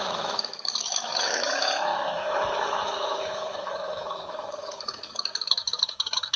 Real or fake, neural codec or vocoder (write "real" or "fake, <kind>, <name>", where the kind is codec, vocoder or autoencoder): fake, autoencoder, DAC-VAE